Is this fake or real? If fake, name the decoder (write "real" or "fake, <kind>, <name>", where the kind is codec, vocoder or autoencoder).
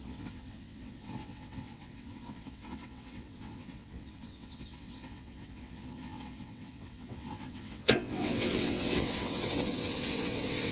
fake, vocoder, WaveNeXt